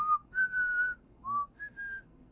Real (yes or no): no